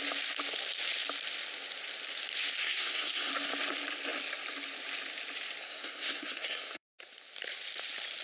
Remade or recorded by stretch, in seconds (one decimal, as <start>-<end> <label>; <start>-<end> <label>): 0.0-2.6 recorded; 2.6-3.3 remade; 3.3-5.6 recorded; 5.6-7.0 remade; 7.0-8.2 recorded